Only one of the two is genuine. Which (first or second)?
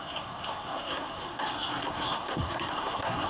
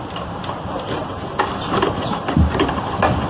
second